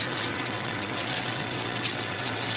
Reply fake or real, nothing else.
fake